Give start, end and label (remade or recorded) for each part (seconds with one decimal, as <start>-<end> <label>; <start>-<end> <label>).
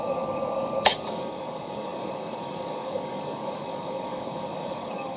0.0-5.2 remade